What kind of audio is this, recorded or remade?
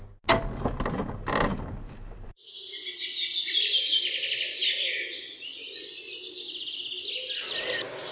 recorded